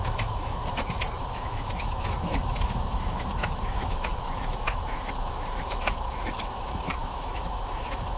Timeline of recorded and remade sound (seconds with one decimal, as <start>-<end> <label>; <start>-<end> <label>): 0.0-0.6 remade; 0.6-1.2 recorded; 1.2-8.2 remade

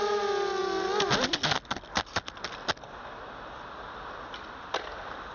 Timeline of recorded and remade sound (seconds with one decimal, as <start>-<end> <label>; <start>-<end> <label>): 0.0-5.3 recorded

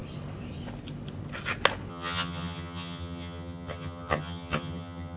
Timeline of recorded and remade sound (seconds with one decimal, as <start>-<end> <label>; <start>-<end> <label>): 0.0-1.9 recorded; 1.9-5.2 remade

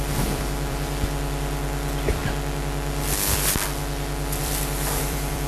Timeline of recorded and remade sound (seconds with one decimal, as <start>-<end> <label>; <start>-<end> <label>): 0.0-2.2 remade; 2.2-4.4 recorded; 4.4-5.5 remade

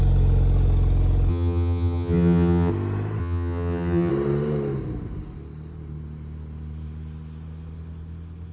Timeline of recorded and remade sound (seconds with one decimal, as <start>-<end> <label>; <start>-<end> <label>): 0.0-1.3 recorded; 1.3-2.7 remade; 2.7-3.2 recorded; 3.2-4.1 remade; 4.1-8.5 recorded